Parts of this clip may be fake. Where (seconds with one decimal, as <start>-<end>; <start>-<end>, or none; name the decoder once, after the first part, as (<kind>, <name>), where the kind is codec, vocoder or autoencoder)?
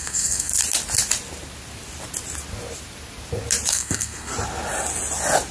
0.0-0.5 (codec, SNAC); 3.7-4.3